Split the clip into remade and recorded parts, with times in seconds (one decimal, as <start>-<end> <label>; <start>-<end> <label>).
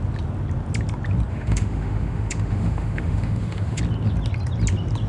0.0-1.3 recorded; 1.3-3.8 remade; 3.8-5.1 recorded